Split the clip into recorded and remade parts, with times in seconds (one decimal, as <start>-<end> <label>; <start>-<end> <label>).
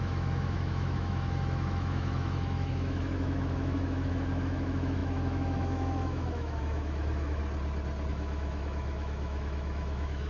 0.0-7.4 remade; 7.4-8.1 recorded; 8.1-10.3 remade